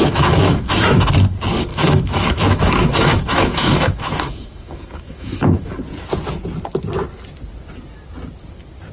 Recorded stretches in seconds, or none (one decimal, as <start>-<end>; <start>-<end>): 1.1-1.7; 5.7-8.9